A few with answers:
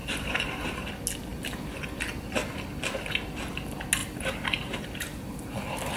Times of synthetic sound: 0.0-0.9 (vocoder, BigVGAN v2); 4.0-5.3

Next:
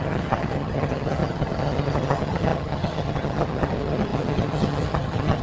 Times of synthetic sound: 0.0-5.4 (vocoder, HiFi-GAN)

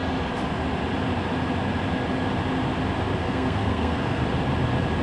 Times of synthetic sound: 3.2-4.2 (codec, SNAC)

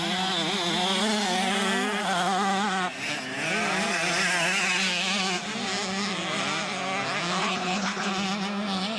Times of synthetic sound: 7.4-8.1 (codec, HILCodec)

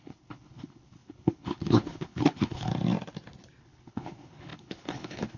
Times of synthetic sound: 0.0-2.7 (codec, HILCodec); 3.6-5.4

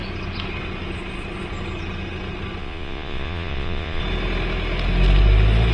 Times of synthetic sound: 2.6-4.0 (vocoder, Vocos)